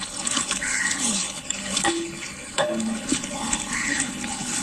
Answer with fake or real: fake